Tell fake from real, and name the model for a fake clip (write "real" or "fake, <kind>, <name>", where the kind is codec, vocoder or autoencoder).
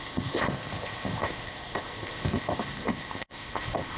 fake, codec, ZipCodec